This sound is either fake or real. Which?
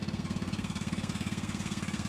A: fake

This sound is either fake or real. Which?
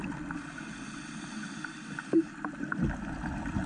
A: real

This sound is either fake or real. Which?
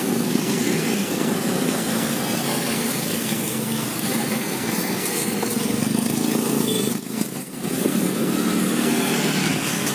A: fake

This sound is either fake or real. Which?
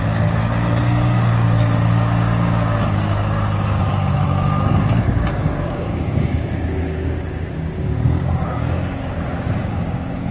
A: fake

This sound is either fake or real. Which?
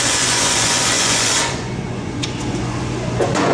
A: fake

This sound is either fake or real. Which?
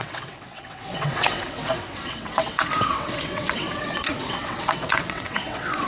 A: fake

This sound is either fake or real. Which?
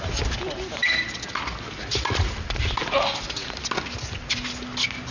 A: real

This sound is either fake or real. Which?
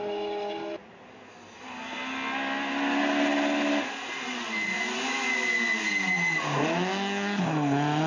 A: real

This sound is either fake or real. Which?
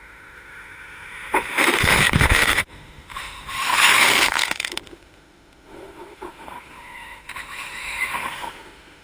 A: fake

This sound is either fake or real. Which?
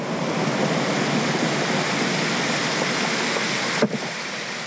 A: real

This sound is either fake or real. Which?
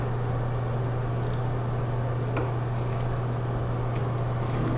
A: real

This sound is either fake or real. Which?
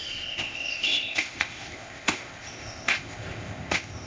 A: fake